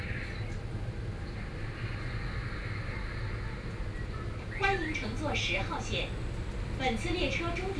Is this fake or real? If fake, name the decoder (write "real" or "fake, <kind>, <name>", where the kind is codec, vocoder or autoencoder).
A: real